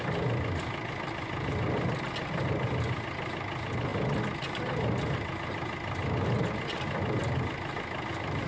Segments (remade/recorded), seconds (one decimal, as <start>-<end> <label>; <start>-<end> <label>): 0.0-8.5 recorded